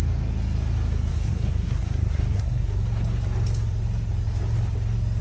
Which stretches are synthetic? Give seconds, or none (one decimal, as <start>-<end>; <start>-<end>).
1.1-2.8